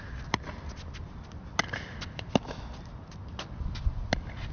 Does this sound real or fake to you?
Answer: real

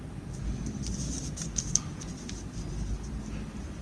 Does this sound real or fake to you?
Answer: real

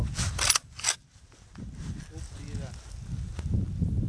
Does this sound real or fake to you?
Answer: real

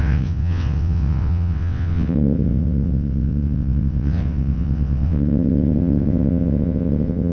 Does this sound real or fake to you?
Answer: fake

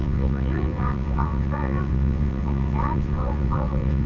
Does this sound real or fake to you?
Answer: fake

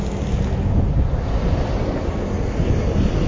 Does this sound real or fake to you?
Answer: real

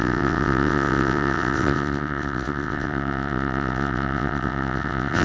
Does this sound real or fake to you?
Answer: fake